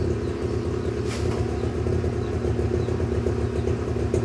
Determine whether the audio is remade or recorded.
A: recorded